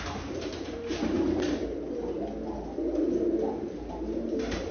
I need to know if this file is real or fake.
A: real